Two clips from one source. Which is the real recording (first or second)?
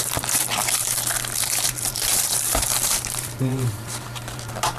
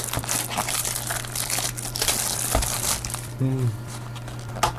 second